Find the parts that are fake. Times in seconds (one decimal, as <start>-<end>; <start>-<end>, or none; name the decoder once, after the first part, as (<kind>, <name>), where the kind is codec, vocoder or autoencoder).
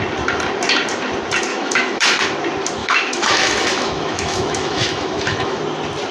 1.5-2.2 (autoencoder, DAC-VAE); 2.8-5.6